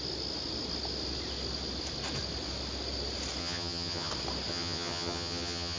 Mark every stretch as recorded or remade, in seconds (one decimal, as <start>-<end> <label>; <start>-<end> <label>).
0.0-3.4 recorded; 3.4-4.1 remade; 4.1-4.5 recorded; 4.5-5.8 remade